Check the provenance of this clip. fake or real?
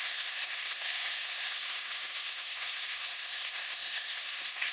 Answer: fake